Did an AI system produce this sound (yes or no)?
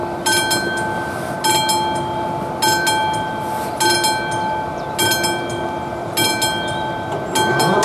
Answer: no